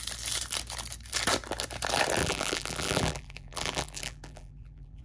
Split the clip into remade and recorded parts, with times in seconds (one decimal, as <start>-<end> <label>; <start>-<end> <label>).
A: 0.0-2.2 recorded; 2.2-5.0 remade

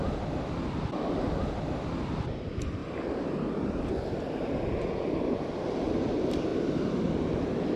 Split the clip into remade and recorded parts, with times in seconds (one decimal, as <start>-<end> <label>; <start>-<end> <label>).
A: 0.0-2.8 recorded; 2.8-3.9 remade; 3.9-7.8 recorded

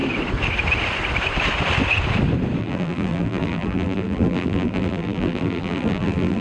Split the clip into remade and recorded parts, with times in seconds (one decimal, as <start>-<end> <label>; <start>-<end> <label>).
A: 0.0-2.6 recorded; 2.6-6.4 remade